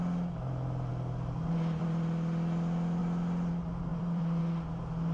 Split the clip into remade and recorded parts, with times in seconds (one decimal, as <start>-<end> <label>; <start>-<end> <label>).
0.0-3.9 recorded; 3.9-4.4 remade; 4.4-5.1 recorded